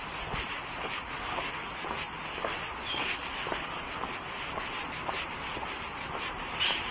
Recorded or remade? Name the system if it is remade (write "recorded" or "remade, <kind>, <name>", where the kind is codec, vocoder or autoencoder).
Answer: recorded